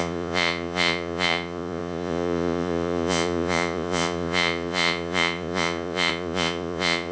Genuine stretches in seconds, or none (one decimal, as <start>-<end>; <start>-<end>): none